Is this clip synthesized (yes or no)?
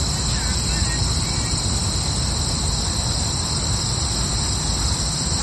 no